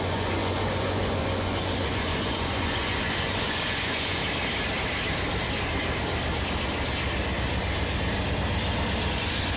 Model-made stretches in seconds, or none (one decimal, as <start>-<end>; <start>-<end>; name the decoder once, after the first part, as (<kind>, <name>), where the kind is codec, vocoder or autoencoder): 0.0-4.2 (vocoder, Vocos); 9.1-9.6